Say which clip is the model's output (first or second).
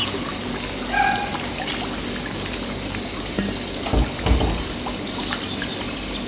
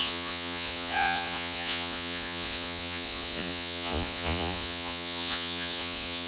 second